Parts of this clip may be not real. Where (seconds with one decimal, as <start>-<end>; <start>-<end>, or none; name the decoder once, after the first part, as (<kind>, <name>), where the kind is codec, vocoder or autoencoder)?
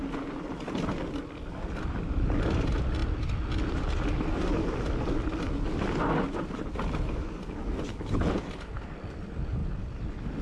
none